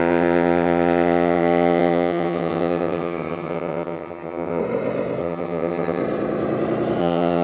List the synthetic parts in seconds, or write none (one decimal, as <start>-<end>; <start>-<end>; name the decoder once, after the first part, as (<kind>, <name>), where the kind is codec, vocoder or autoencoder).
0.0-4.6 (vocoder, HiFi-GAN); 5.2-6.0; 7.0-7.4